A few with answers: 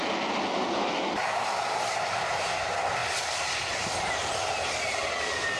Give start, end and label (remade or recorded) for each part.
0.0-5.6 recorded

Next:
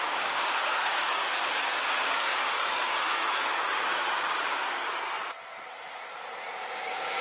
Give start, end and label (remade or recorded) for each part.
0.0-4.9 remade; 4.9-6.7 recorded; 6.7-7.2 remade

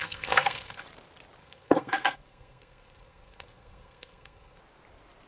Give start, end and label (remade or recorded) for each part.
0.0-0.8 remade; 0.8-1.4 recorded; 1.4-4.6 remade; 4.6-5.3 recorded